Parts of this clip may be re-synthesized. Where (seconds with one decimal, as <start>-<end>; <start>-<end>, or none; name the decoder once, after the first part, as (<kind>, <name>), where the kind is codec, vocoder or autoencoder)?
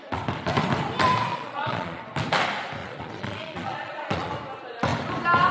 1.3-2.0 (vocoder, Vocos); 2.8-4.3